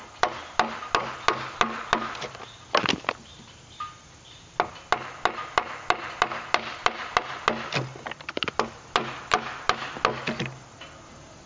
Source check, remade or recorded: recorded